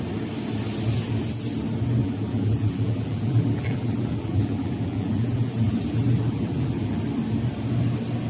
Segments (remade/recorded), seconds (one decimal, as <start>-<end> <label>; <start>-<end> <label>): 0.0-2.0 recorded; 2.0-7.0 remade; 7.0-8.3 recorded